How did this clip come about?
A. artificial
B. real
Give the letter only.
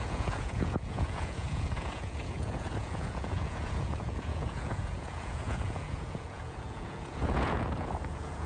A